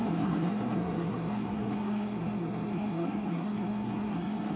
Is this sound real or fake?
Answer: fake